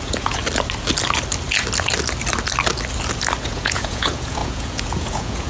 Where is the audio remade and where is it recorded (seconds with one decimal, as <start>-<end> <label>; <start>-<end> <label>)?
0.0-0.4 remade; 0.4-3.4 recorded; 3.4-5.5 remade